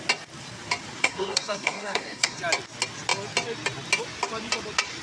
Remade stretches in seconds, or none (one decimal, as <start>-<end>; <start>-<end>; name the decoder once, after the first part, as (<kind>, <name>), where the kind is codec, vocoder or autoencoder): 1.0-2.4 (codec, SNAC)